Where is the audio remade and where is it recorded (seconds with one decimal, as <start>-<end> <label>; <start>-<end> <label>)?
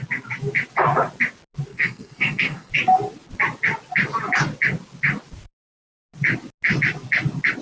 0.0-1.7 recorded; 1.7-2.7 remade; 2.7-7.6 recorded